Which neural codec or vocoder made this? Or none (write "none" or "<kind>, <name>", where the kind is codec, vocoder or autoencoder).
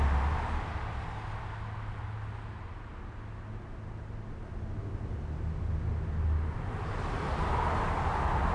none